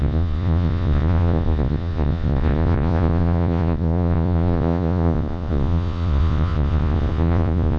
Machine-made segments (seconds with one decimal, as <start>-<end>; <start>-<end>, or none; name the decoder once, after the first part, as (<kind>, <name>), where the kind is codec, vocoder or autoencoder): 0.0-7.8 (vocoder, Vocos)